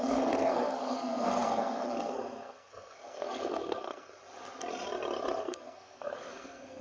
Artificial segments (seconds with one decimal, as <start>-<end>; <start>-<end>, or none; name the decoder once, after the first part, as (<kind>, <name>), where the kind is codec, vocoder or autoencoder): 0.0-4.1 (codec, SNAC); 5.4-6.8